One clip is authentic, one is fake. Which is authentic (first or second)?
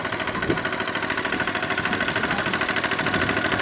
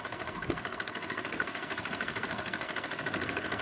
first